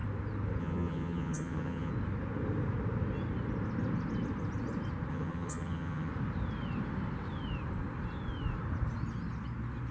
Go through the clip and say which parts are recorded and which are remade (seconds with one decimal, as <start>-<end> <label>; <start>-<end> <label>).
0.0-0.6 recorded; 0.6-1.9 remade; 1.9-5.1 recorded; 5.1-6.1 remade; 6.1-9.9 recorded